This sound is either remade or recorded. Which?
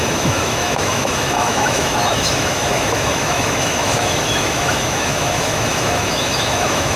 remade